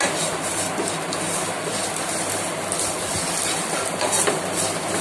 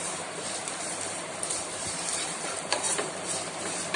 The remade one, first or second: second